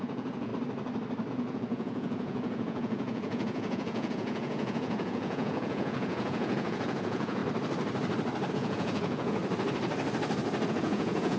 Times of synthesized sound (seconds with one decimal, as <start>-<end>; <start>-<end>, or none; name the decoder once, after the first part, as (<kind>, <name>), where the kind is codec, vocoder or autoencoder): 0.0-0.5 (vocoder, Vocos); 1.3-7.4; 8.5-9.4; 10.7-11.4